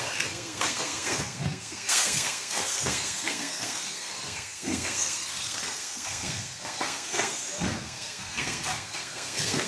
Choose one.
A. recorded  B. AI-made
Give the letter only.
B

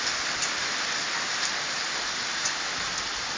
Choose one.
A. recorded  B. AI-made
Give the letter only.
A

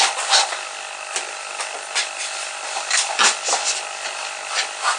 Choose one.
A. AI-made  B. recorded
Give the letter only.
B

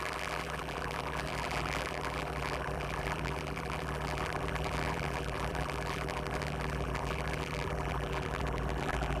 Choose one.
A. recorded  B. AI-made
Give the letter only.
B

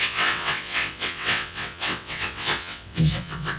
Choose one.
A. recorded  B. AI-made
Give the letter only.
B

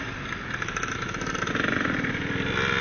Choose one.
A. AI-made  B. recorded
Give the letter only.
B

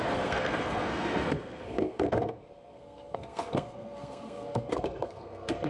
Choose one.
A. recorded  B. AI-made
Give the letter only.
B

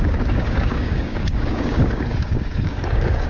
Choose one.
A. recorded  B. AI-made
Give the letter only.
B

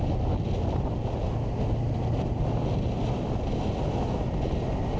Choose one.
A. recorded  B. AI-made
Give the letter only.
A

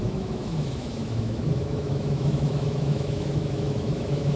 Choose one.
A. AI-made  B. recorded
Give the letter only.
A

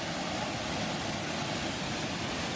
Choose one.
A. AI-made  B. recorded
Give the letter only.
A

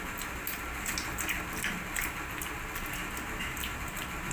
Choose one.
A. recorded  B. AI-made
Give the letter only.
A